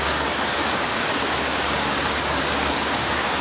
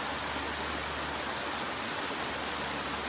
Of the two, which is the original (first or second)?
second